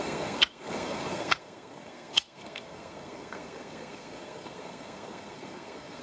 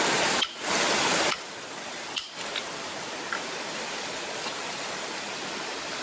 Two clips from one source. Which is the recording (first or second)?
second